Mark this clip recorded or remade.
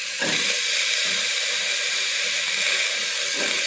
remade